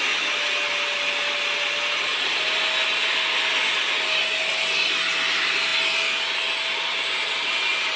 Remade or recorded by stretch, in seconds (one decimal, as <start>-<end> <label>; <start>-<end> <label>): 0.0-8.0 recorded